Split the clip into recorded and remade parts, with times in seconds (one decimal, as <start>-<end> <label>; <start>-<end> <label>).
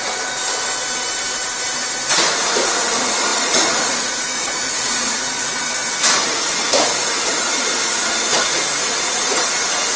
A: 0.0-0.4 remade; 0.4-2.1 recorded; 2.1-10.0 remade